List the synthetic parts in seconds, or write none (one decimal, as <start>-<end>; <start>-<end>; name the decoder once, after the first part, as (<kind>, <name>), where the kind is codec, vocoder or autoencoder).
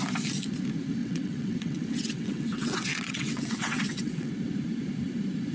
1.0-4.3 (vocoder, WaveNeXt)